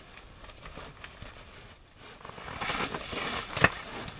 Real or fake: real